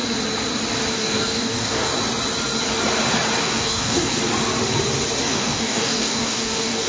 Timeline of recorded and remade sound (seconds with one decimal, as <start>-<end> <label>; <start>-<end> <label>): 0.0-0.9 recorded; 0.9-1.9 remade; 1.9-3.4 recorded; 3.4-4.2 remade; 4.2-5.2 recorded; 5.2-6.9 remade